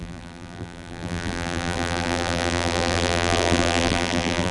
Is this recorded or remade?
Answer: remade